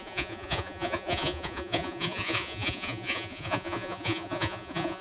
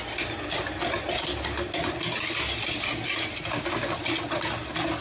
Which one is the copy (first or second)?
first